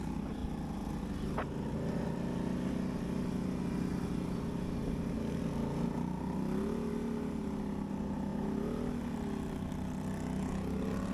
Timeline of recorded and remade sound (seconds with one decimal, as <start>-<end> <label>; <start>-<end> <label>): 0.0-11.1 recorded